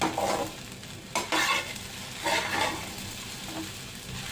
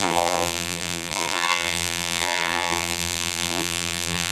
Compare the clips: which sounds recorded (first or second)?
first